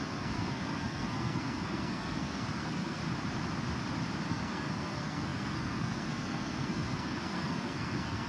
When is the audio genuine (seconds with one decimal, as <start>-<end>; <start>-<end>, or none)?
3.0-4.3